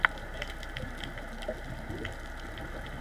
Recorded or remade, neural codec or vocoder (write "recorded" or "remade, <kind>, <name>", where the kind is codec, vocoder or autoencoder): recorded